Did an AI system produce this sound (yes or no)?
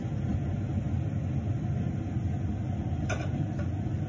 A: no